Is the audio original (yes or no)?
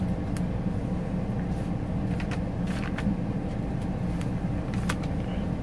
yes